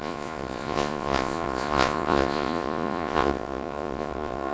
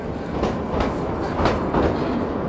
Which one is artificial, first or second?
first